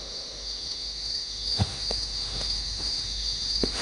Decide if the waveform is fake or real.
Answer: fake